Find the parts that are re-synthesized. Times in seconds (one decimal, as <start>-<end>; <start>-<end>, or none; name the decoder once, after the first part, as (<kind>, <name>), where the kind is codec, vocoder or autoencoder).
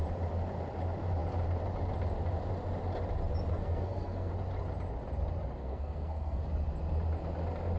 3.5-4.3 (codec, SNAC); 5.6-6.4